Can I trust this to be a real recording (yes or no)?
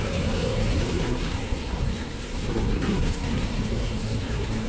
no